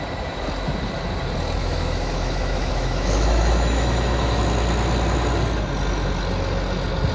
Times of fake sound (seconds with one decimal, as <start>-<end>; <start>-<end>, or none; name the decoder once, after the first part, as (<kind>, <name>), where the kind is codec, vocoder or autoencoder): 1.6-4.4 (autoencoder, DAC-VAE)